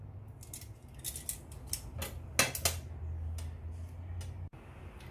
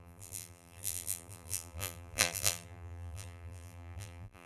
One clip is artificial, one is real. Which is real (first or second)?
first